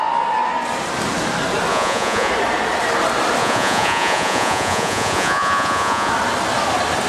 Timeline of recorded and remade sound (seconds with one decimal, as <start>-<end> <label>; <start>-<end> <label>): 0.0-1.7 recorded; 1.7-2.3 remade; 2.3-3.4 recorded; 3.4-6.1 remade; 6.1-7.1 recorded